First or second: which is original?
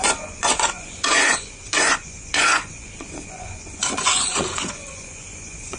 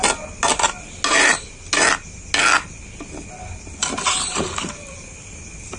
second